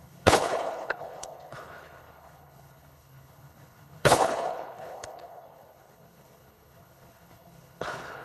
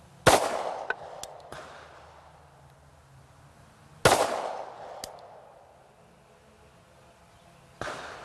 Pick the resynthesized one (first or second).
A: first